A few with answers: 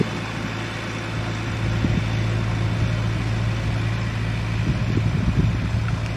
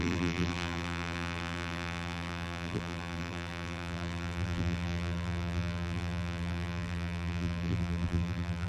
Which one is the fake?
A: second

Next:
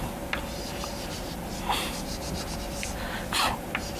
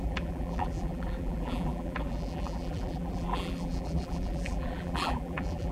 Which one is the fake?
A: second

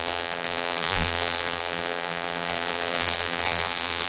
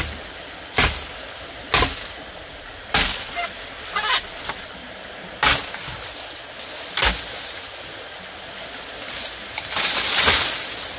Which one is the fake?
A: first